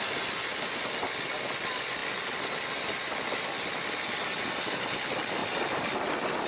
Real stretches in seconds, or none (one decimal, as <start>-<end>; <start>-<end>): 0.0-6.5